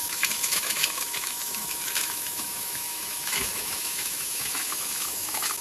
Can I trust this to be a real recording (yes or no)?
no